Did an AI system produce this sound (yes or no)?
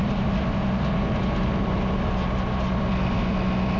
no